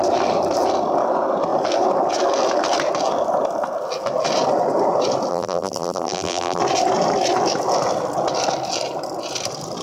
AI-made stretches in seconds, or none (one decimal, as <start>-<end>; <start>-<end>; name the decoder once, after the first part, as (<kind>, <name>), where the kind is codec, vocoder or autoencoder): 5.3-6.6 (vocoder, BigVGAN v2)